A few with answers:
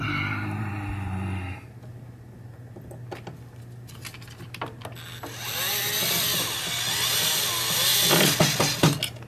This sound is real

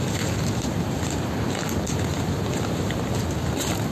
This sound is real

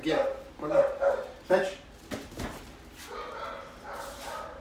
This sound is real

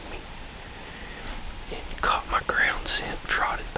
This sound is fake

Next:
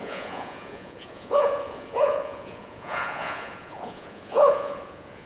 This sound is fake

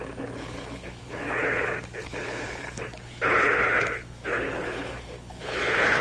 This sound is fake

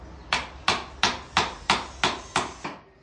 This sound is real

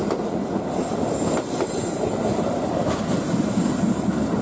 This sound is real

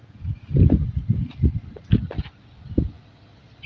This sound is real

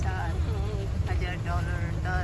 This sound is real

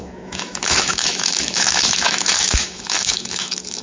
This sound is fake